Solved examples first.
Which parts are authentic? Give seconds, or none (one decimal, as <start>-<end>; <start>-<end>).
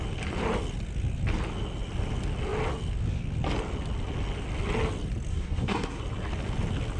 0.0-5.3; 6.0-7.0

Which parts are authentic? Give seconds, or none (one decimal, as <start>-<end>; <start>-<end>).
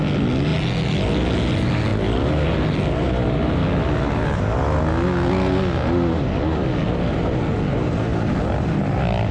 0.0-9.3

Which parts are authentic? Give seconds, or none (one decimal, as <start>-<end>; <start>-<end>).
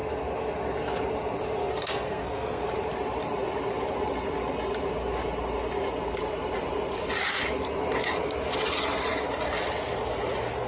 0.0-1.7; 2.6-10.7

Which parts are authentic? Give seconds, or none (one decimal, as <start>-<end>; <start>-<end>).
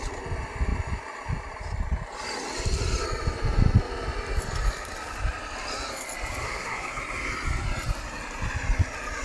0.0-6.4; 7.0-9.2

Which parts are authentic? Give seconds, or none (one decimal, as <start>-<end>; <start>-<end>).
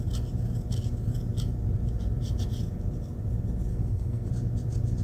0.0-3.7; 4.3-5.0